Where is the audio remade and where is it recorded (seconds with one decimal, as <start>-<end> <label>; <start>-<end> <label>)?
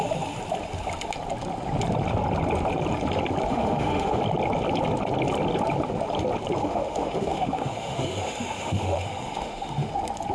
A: 0.0-3.5 recorded; 3.5-4.2 remade; 4.2-6.6 recorded; 6.6-9.9 remade; 9.9-10.3 recorded